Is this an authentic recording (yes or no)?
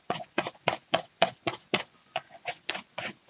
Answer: no